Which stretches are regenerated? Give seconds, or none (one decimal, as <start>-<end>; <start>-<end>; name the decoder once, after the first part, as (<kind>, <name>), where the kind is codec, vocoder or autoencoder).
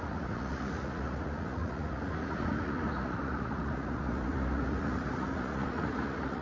0.0-6.4 (vocoder, Vocos)